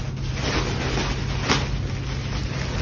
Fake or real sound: real